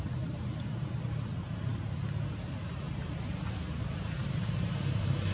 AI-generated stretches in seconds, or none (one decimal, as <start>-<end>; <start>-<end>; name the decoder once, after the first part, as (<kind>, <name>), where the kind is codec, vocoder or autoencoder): 0.0-1.7 (vocoder, BigVGAN v2); 4.2-5.3